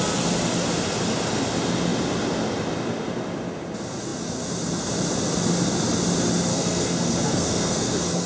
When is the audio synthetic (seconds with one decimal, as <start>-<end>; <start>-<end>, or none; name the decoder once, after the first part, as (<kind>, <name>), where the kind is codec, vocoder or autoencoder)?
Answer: 6.5-8.3 (codec, SNAC)